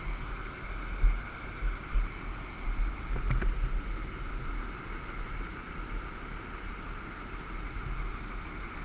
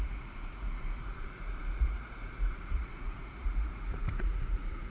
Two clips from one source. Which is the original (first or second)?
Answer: first